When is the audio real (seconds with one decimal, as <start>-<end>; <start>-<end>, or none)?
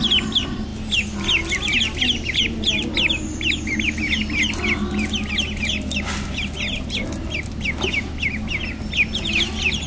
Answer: 0.0-9.9